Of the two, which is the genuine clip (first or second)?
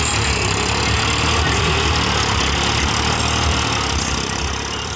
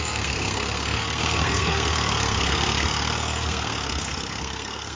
first